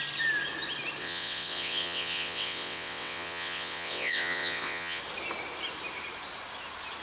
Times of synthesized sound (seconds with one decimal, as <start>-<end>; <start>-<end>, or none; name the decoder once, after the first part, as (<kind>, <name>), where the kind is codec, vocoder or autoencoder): 1.0-5.0 (vocoder, WaveNeXt)